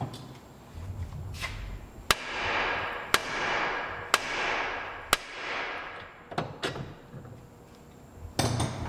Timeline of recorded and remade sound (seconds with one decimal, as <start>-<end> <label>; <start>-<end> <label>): 0.0-8.9 recorded